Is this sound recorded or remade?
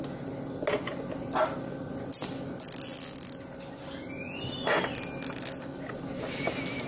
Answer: recorded